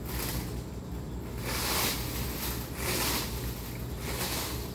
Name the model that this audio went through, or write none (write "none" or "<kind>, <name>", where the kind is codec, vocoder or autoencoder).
none